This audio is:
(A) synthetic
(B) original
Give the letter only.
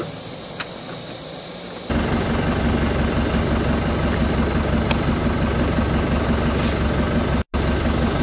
B